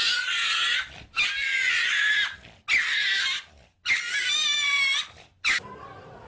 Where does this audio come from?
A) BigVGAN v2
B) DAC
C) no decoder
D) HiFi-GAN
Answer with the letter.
C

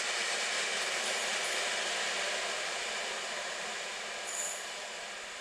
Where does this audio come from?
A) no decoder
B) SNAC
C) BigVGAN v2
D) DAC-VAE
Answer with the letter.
A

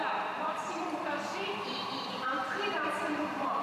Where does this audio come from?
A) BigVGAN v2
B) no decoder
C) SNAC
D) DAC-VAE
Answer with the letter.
A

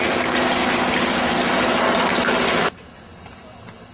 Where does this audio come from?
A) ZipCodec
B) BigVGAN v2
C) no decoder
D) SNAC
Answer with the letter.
C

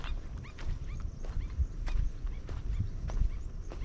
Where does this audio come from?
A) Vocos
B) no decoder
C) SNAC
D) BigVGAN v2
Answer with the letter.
D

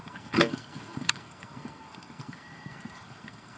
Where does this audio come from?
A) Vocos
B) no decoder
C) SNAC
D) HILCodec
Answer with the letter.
C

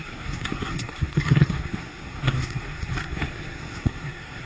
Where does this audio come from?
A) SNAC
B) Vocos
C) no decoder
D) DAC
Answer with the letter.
A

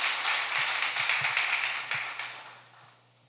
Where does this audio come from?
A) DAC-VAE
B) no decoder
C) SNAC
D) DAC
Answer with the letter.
B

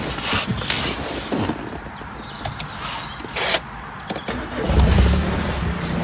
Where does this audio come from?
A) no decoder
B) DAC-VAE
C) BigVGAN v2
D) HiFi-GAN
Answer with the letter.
A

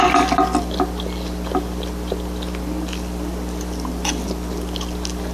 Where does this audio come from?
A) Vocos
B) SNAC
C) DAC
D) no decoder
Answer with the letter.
D